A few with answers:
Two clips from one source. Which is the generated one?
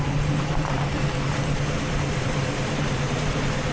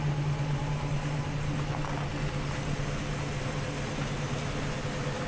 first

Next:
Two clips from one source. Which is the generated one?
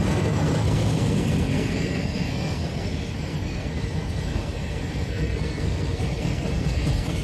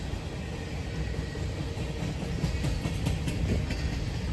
first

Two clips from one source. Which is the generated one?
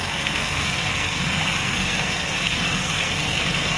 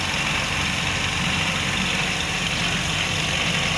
first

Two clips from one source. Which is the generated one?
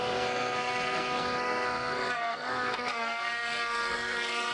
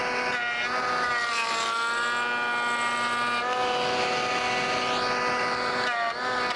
first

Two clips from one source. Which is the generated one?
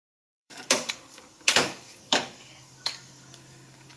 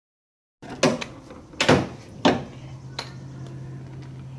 first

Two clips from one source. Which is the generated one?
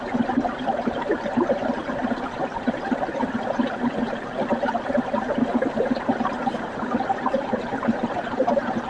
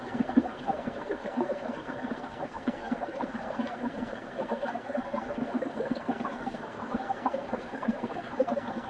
second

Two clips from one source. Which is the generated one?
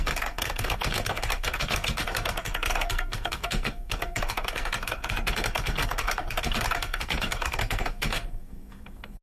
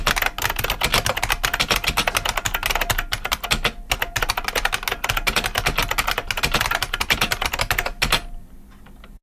first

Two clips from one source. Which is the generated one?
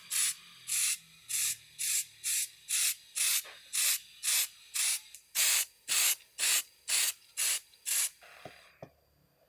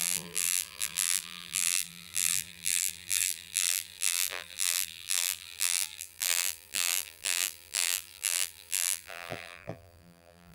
second